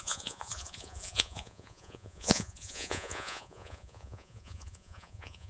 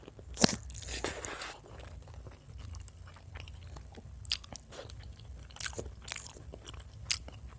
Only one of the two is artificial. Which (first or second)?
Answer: first